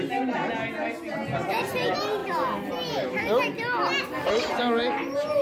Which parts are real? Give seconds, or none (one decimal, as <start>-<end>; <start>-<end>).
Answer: 0.0-5.4